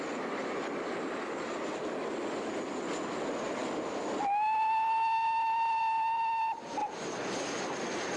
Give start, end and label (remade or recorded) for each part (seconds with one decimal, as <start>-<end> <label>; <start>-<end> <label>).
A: 0.0-0.4 recorded; 0.4-1.8 remade; 1.8-6.8 recorded; 6.8-8.2 remade